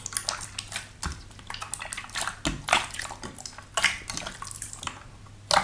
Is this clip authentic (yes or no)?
yes